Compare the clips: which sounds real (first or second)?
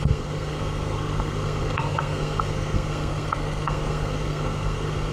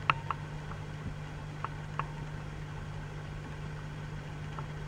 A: second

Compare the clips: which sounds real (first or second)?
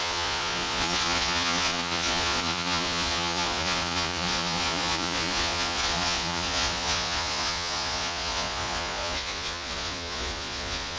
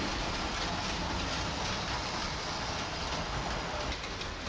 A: second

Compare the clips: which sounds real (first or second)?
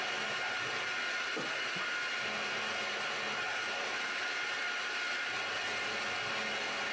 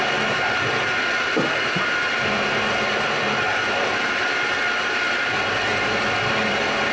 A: first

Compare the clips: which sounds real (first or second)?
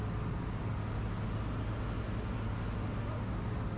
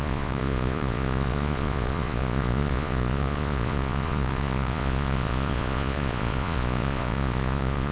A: first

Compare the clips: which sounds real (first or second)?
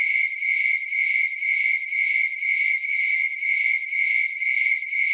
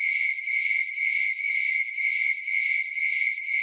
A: first